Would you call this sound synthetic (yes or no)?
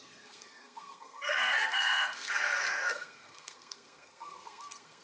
yes